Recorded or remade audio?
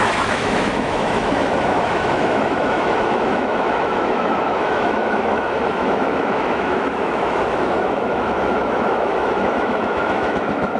remade